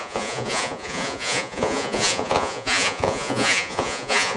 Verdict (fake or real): fake